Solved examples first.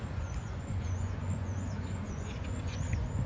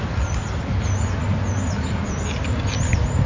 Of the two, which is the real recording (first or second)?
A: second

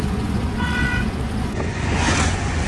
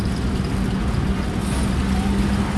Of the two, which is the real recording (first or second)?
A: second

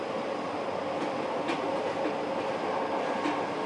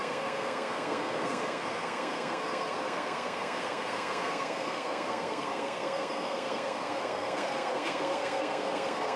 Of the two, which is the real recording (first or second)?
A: first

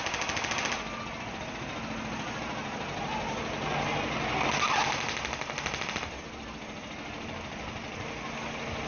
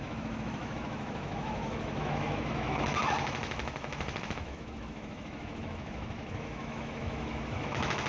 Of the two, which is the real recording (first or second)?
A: first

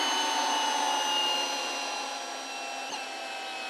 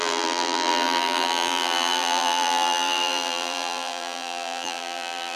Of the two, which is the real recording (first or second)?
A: first